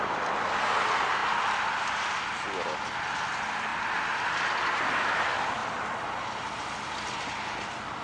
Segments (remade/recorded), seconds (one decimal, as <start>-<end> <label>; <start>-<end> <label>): 0.0-8.0 recorded